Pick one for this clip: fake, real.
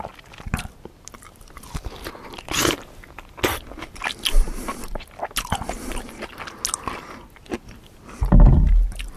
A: real